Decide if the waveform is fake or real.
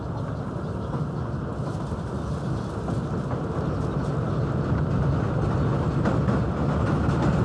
real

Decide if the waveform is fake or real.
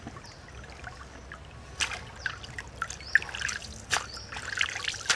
real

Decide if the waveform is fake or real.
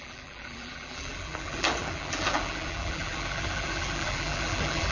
fake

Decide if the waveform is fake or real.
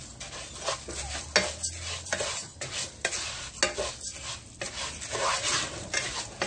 real